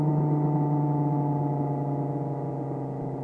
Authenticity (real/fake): real